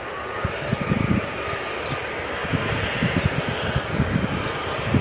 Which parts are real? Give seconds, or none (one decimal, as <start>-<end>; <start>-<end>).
0.0-5.0